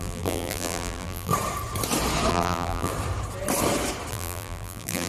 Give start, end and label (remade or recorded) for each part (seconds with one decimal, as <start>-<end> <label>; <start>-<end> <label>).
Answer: 0.0-1.3 remade; 1.3-2.3 recorded; 2.3-2.9 remade; 2.9-4.1 recorded; 4.1-5.1 remade